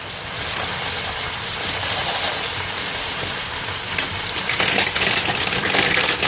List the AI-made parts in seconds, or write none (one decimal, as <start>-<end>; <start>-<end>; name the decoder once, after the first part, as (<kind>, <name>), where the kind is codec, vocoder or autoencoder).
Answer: none